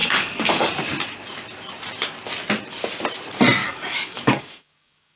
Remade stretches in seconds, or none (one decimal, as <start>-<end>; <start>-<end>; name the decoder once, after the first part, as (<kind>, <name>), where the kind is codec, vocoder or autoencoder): 0.0-0.7 (codec, DAC); 3.6-5.2